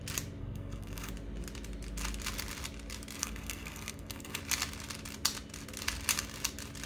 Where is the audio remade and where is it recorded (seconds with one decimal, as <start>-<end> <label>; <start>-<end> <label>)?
0.0-0.4 recorded; 0.4-1.1 remade; 1.1-3.2 recorded; 3.2-4.4 remade; 4.4-6.9 recorded